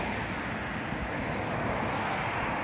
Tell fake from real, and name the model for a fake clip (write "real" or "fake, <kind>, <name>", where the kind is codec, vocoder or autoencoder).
real